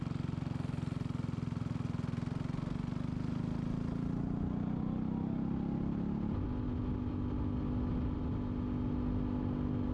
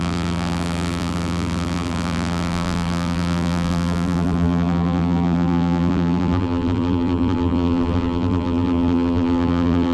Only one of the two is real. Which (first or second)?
first